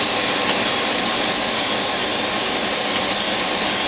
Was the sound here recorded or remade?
recorded